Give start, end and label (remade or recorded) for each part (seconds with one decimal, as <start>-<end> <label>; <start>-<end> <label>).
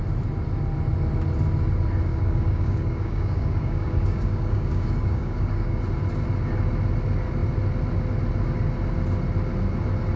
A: 0.0-2.1 recorded; 2.1-5.8 remade; 5.8-10.2 recorded